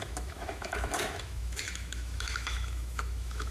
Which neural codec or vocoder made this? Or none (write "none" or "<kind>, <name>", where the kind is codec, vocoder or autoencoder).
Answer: autoencoder, DAC-VAE